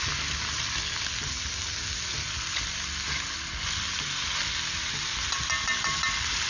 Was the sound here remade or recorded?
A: recorded